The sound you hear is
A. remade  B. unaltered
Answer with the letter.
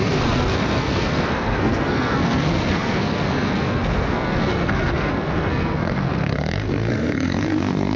A